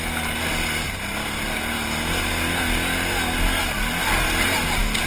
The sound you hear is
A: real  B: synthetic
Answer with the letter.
A